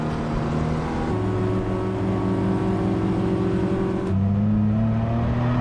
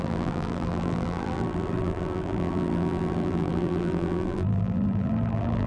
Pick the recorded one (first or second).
first